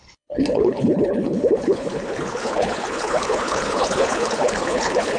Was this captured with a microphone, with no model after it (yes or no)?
no